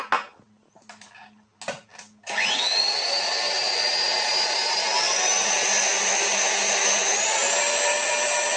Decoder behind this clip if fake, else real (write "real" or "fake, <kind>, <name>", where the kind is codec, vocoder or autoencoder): real